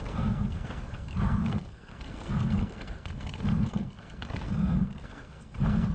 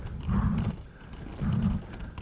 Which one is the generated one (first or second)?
first